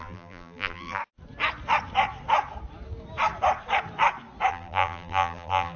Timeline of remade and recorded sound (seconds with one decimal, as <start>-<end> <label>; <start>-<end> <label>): 0.0-1.0 remade; 1.0-4.5 recorded; 4.5-5.8 remade